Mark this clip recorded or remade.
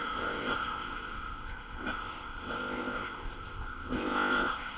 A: remade